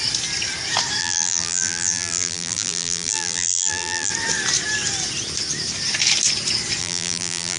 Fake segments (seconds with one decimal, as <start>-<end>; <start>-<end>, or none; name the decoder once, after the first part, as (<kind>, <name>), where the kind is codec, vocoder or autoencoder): 1.0-4.1 (vocoder, BigVGAN v2); 6.8-7.6